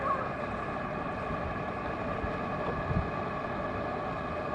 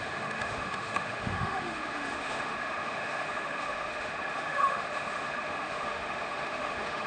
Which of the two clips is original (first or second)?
first